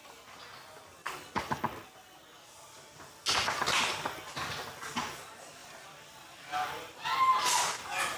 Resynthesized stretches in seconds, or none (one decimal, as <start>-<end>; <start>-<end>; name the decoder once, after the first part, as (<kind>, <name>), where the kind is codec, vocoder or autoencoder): 5.6-7.2 (vocoder, BigVGAN v2)